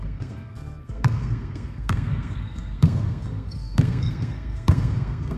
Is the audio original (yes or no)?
no